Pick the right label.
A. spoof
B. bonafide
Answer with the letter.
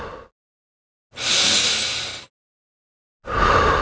B